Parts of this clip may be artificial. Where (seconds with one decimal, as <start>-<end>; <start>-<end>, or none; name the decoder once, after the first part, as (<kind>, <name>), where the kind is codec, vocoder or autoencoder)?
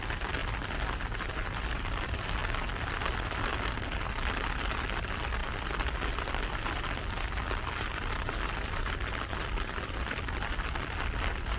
none